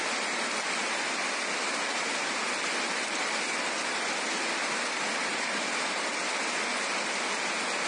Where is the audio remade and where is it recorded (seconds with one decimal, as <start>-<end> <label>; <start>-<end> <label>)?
0.0-0.8 recorded; 0.8-5.1 remade; 5.1-7.9 recorded